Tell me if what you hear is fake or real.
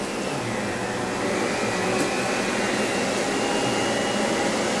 real